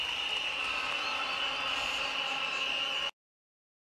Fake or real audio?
real